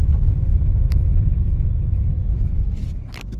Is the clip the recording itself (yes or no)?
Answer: yes